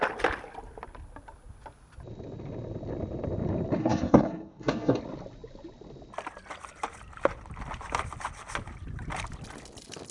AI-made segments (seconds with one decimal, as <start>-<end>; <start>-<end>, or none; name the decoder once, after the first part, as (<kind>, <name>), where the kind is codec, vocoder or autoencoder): 3.8-5.0 (codec, SNAC)